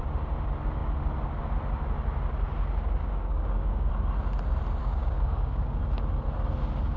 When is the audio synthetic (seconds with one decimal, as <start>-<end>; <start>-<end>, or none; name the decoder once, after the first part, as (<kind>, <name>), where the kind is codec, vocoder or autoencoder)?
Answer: 3.0-3.9 (codec, DAC); 4.8-5.8